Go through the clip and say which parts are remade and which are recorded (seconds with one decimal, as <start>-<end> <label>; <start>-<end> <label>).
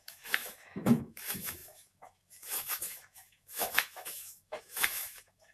0.0-5.5 remade